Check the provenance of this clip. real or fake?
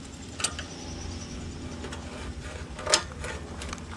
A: real